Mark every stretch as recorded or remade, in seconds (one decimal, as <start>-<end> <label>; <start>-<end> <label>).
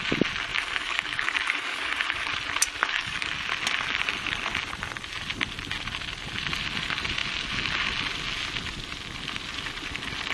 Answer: 0.0-0.5 recorded; 0.5-2.3 remade; 2.3-2.8 recorded; 2.8-3.3 remade; 3.3-10.3 recorded